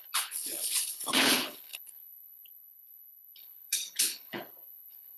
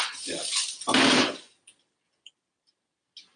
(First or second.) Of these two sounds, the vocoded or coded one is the first